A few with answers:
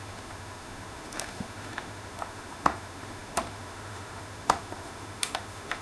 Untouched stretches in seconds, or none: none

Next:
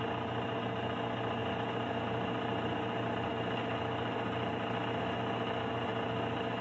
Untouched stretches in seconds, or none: 0.0-6.6

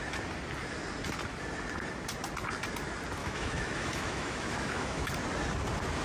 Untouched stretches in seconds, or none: 0.0-3.2; 5.1-6.0

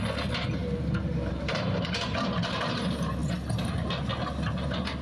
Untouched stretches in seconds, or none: 0.0-0.6; 2.6-5.0

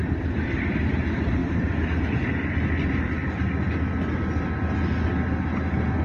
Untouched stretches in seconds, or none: 0.0-6.0

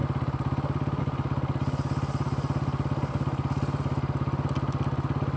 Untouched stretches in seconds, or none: 1.0-5.4

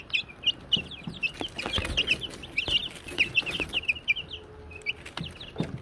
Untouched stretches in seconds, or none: 0.0-5.8

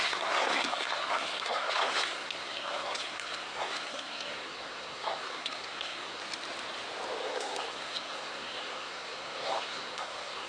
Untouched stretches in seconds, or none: 6.2-7.2